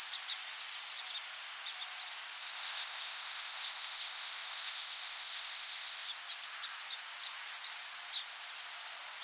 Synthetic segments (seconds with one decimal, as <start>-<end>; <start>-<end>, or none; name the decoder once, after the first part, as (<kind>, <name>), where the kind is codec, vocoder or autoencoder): 2.4-6.1 (codec, ZipCodec)